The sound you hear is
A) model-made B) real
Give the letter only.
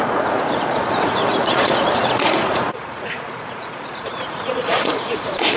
A